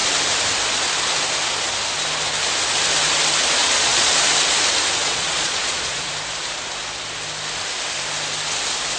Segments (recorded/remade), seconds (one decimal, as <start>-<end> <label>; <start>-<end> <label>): 0.0-3.6 recorded; 3.6-4.1 remade; 4.1-5.0 recorded; 5.0-6.1 remade; 6.1-9.0 recorded